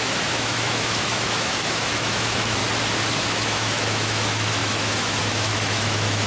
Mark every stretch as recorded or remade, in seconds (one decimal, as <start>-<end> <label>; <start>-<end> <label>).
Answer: 0.0-2.6 remade; 2.6-3.1 recorded; 3.1-6.3 remade